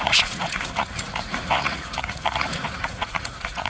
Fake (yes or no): yes